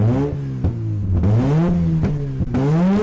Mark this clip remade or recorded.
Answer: recorded